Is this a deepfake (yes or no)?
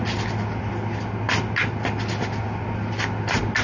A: no